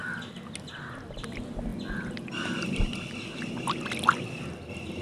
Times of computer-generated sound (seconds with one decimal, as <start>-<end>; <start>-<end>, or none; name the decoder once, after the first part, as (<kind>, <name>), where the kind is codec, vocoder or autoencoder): none